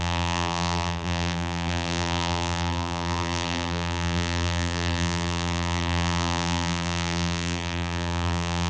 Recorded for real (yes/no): no